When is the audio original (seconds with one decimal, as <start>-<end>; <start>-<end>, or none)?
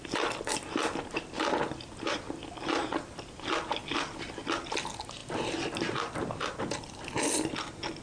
0.0-8.0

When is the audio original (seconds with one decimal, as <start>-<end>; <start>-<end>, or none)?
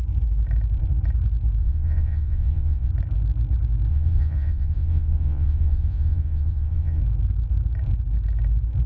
0.0-1.6; 2.9-3.9; 7.0-8.9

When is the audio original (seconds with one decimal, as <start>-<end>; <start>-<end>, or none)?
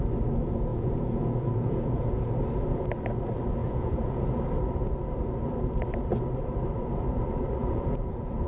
0.0-0.7; 2.3-3.6; 4.2-7.6